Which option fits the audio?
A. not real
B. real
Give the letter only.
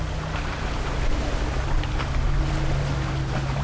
B